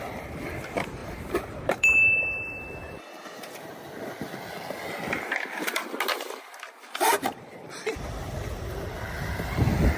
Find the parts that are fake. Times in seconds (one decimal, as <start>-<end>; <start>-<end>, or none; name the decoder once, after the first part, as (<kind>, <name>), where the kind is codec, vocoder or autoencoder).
1.0-2.2 (vocoder, BigVGAN v2); 2.8-3.9